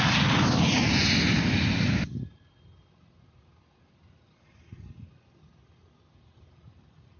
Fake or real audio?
real